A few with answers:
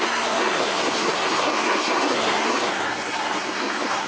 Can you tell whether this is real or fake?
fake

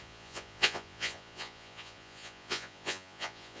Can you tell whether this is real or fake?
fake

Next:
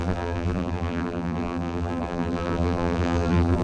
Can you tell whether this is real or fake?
fake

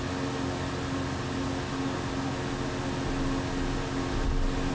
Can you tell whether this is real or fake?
real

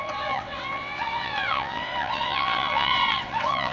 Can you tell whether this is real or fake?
fake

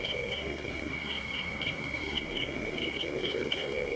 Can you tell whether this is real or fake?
fake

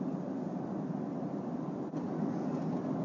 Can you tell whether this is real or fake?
real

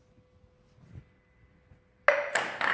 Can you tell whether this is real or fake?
real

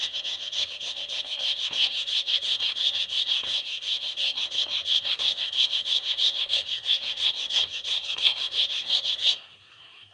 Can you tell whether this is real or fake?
fake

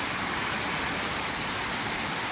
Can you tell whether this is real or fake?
real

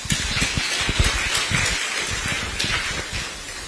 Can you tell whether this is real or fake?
real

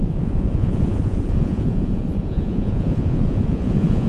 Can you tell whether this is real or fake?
fake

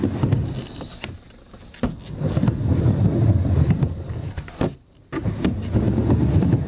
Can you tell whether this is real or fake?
real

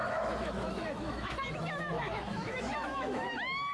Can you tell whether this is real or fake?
fake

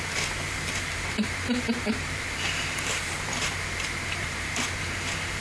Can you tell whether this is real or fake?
fake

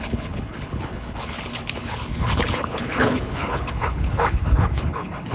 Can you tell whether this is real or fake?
fake